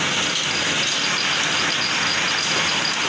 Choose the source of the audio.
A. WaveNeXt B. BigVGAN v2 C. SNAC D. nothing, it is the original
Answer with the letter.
D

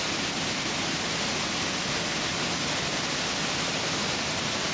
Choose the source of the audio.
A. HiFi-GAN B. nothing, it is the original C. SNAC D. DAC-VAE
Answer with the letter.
B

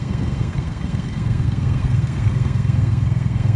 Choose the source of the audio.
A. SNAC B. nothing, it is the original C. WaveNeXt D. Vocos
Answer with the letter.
A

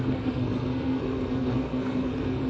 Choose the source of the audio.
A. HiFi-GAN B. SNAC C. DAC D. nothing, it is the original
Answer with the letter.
B